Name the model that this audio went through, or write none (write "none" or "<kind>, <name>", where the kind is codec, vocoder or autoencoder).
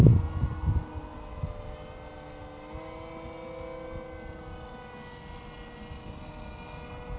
none